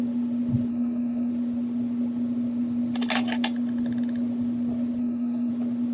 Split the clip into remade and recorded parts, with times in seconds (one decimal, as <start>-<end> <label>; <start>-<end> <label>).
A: 0.0-0.7 recorded; 0.7-1.3 remade; 1.3-5.0 recorded; 5.0-5.5 remade; 5.5-5.9 recorded